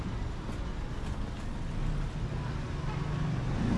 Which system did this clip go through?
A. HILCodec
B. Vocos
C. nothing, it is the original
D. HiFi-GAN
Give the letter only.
C